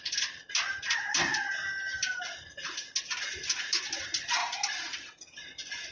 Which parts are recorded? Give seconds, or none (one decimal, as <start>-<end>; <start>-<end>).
0.0-5.9

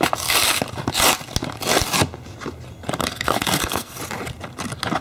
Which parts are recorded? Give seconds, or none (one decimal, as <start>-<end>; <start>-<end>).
0.0-3.0; 4.0-5.0

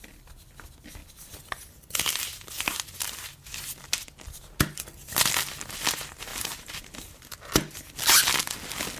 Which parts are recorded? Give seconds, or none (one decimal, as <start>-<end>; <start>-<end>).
0.0-6.3; 7.9-9.0

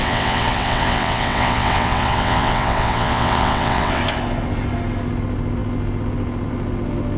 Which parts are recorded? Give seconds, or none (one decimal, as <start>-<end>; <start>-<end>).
4.0-7.2